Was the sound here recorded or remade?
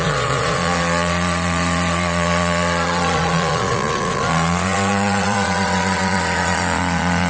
remade